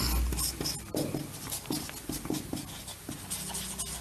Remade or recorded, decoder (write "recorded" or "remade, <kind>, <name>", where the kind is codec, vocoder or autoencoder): recorded